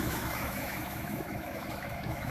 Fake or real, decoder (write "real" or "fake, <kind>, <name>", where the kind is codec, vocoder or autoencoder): fake, autoencoder, DAC-VAE